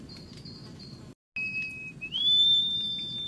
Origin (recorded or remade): recorded